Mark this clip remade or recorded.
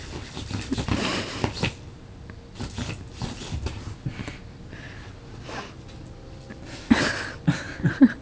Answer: recorded